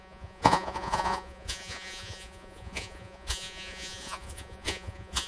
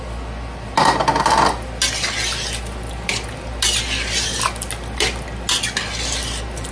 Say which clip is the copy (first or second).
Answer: first